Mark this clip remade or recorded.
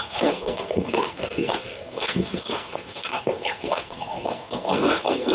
remade